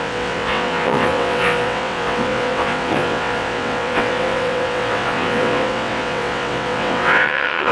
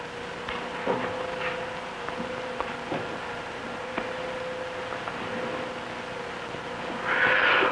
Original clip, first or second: second